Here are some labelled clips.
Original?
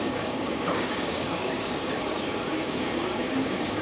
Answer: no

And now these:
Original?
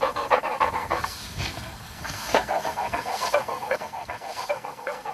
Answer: no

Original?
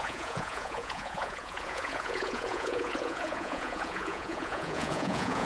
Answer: no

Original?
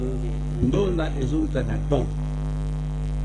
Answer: no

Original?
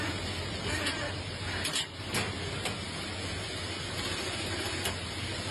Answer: yes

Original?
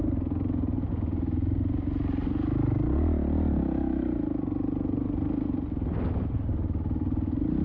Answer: yes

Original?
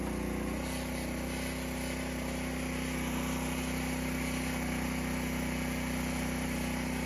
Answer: yes